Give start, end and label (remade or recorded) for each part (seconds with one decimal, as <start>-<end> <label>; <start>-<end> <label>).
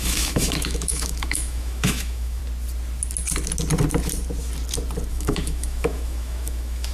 0.0-2.4 remade; 2.4-5.1 recorded; 5.1-6.9 remade